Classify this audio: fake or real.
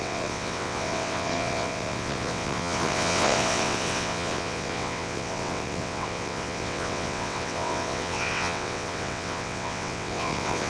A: fake